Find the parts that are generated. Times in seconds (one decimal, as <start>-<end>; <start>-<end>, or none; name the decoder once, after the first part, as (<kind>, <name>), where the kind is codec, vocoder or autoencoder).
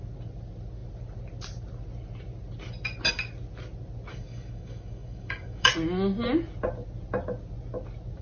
4.1-5.7 (codec, DAC)